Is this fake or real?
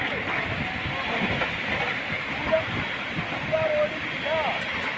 real